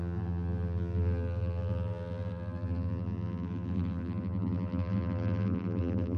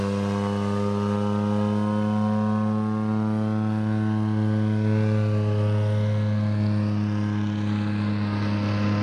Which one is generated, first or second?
first